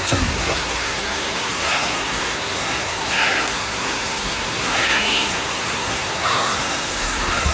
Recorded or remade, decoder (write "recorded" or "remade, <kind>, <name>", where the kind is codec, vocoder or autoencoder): remade, codec, SNAC